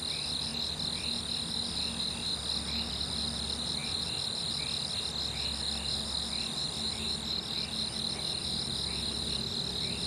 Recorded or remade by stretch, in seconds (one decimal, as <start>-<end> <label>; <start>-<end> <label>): 0.0-10.1 recorded